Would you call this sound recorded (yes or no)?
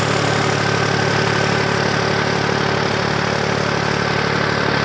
yes